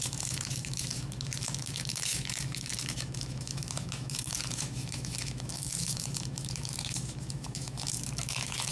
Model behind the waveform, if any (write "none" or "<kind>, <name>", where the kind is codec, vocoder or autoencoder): autoencoder, DAC-VAE